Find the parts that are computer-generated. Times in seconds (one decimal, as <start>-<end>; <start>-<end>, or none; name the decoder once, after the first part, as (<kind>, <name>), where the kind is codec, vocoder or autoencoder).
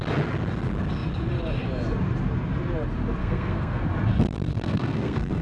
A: 3.2-3.8 (codec, SNAC); 4.5-5.4